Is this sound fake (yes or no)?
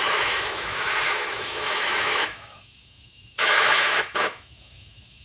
yes